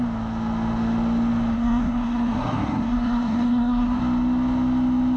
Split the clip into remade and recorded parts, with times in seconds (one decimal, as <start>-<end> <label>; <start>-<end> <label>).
0.0-1.5 recorded; 1.5-4.0 remade; 4.0-5.2 recorded